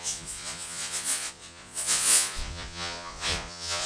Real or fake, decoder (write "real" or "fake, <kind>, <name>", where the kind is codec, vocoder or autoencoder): fake, vocoder, Vocos